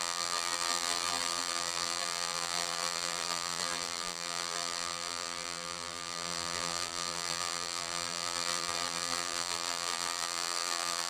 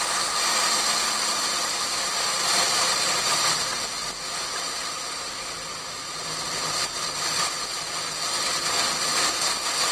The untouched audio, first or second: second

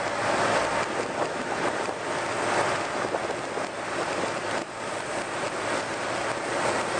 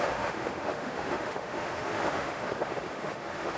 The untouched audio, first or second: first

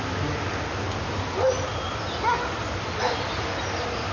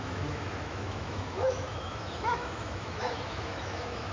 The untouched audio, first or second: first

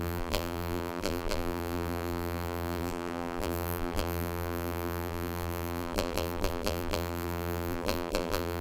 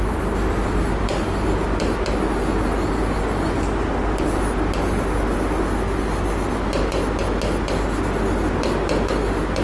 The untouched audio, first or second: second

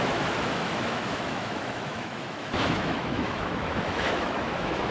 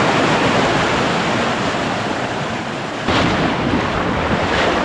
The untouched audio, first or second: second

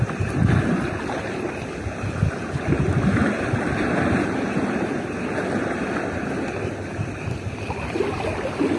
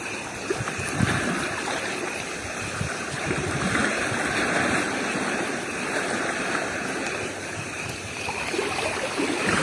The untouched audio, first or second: first